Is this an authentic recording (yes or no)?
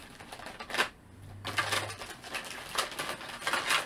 yes